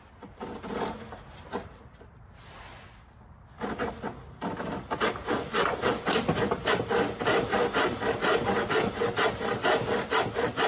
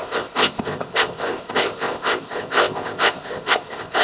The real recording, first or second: first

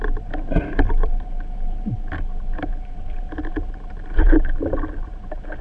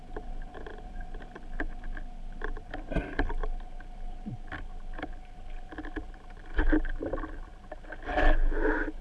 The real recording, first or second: second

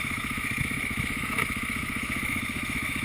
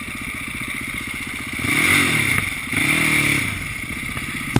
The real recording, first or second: second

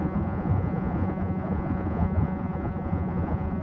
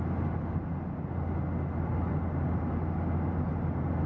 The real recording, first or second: second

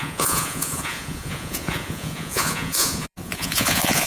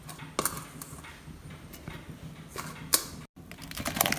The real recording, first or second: second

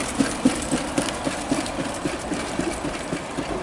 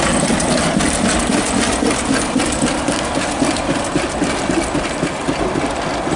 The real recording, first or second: second